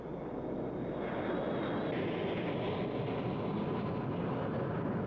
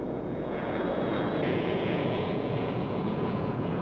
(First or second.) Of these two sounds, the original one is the first